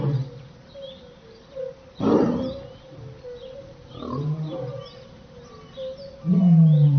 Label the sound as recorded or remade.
recorded